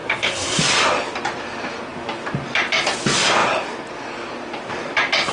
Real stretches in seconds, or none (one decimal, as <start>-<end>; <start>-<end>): 0.6-5.3